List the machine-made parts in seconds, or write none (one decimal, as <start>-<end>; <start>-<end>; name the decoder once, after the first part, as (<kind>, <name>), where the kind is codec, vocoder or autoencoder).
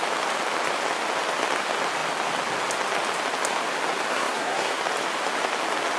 4.1-4.8 (codec, SNAC)